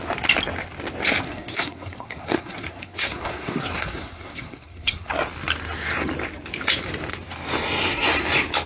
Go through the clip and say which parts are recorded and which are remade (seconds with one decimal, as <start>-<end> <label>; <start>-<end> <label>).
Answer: 0.0-1.2 recorded; 1.2-5.1 remade; 5.1-8.7 recorded